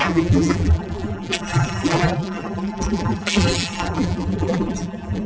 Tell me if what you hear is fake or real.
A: fake